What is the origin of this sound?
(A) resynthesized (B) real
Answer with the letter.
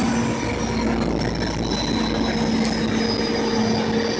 B